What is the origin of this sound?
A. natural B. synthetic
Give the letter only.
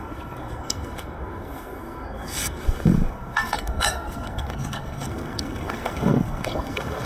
B